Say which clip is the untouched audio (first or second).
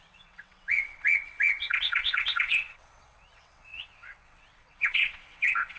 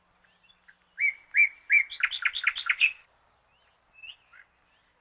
second